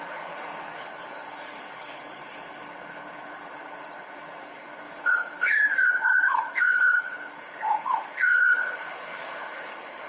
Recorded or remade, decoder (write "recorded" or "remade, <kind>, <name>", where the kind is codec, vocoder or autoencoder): remade, codec, HILCodec